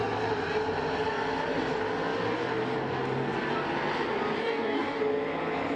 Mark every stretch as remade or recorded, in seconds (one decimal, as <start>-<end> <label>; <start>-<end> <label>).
0.0-4.4 recorded; 4.4-5.0 remade; 5.0-5.8 recorded